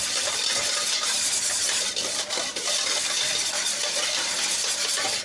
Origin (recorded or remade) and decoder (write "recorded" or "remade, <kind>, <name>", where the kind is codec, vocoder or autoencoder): recorded